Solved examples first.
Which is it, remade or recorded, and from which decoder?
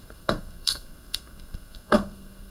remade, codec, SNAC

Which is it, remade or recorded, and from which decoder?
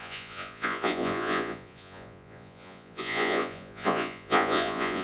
remade, vocoder, Vocos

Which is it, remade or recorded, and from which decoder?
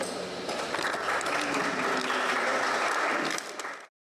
recorded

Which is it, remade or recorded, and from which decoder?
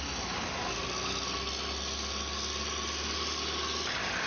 recorded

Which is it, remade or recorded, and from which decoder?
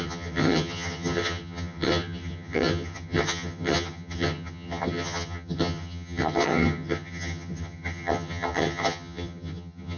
remade, vocoder, HiFi-GAN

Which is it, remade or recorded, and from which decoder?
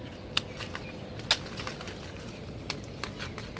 recorded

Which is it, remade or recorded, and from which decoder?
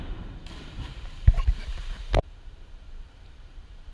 remade, vocoder, BigVGAN v2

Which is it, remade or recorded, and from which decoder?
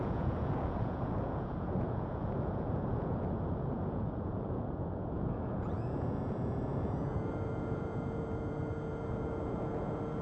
remade, vocoder, Vocos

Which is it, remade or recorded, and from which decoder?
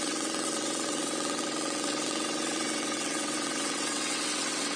remade, vocoder, WaveNeXt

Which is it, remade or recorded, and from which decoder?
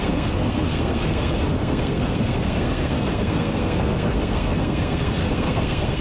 remade, codec, SNAC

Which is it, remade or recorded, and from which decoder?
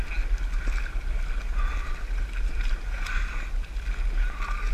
recorded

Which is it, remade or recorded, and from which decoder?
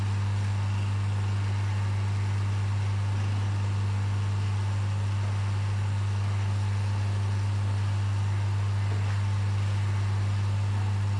recorded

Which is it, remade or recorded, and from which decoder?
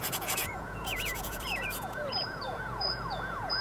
remade, vocoder, Vocos